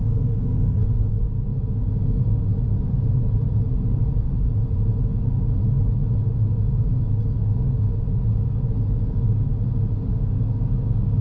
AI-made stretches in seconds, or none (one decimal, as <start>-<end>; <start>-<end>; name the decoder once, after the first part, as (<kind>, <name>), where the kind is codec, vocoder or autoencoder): 0.0-0.8 (codec, DAC); 1.9-2.5; 6.6-9.5; 10.1-11.2